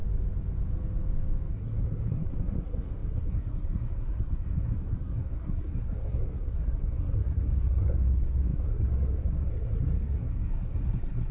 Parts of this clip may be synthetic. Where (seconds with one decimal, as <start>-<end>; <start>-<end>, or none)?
1.5-11.3